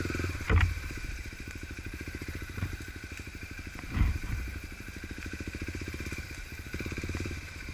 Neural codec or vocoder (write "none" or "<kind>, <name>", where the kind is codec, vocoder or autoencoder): vocoder, BigVGAN v2